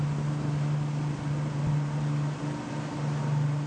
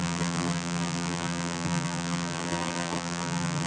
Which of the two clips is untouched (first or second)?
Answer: first